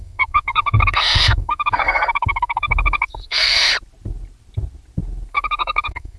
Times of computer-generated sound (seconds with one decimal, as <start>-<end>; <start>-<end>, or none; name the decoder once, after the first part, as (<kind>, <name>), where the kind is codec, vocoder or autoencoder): 0.0-3.7 (codec, SNAC); 5.3-6.2